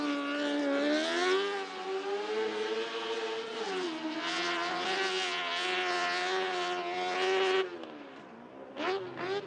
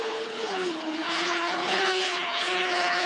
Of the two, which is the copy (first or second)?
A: second